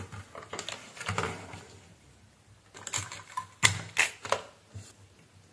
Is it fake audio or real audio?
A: real